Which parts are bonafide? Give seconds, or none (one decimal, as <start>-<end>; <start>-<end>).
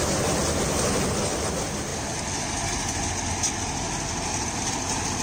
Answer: 0.0-5.2